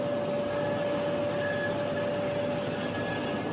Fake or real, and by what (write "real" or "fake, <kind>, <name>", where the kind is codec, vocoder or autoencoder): real